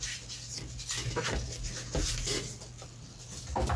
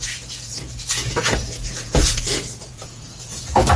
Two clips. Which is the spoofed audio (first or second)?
second